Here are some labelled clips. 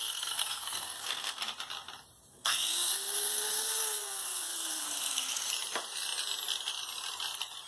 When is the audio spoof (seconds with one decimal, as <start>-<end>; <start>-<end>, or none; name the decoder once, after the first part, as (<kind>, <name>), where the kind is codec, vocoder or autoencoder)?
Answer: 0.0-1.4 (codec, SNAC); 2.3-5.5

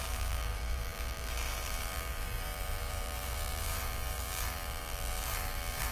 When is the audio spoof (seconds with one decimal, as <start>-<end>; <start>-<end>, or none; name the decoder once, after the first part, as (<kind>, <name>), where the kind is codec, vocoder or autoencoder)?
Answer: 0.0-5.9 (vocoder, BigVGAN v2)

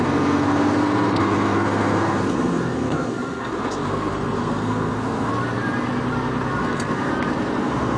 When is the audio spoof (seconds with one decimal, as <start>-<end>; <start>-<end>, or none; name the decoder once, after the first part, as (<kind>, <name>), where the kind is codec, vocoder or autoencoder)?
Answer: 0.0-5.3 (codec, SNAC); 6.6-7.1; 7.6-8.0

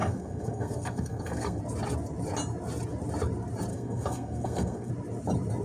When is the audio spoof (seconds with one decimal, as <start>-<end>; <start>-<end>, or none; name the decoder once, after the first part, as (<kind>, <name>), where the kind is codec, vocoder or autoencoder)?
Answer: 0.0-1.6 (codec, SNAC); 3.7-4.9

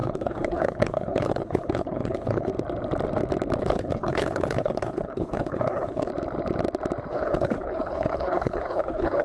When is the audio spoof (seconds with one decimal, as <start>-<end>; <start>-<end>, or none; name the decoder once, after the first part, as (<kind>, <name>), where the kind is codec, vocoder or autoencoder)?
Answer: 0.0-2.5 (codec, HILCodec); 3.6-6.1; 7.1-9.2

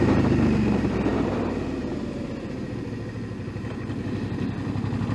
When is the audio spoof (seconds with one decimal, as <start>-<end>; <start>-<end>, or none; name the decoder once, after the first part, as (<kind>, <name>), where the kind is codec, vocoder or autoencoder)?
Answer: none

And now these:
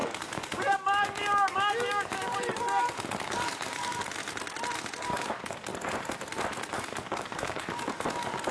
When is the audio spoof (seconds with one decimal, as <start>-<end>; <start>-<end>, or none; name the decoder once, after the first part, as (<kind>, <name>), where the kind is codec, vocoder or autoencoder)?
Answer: 0.0-4.2 (codec, DAC); 5.0-5.7; 6.7-8.5

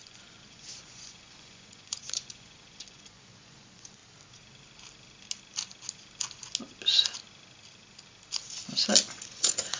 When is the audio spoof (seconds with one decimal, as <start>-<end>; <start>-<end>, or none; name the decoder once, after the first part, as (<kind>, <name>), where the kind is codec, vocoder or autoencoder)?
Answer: 0.0-4.0 (vocoder, Vocos); 9.1-9.8